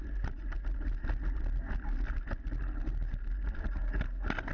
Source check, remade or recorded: recorded